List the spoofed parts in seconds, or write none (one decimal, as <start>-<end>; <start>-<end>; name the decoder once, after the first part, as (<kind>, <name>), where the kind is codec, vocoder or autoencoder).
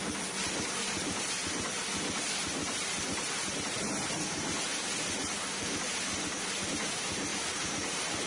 2.6-3.5 (vocoder, BigVGAN v2); 7.3-8.3